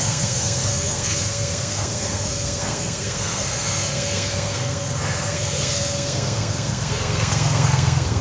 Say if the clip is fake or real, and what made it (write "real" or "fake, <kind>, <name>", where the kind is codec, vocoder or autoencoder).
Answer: fake, codec, SNAC